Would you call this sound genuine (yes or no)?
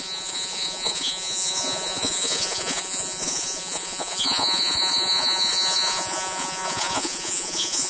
no